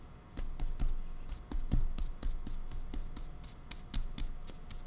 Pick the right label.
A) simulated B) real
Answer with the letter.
B